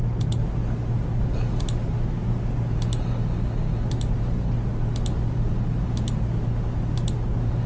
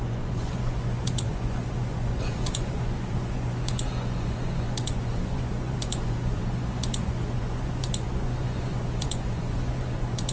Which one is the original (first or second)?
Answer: first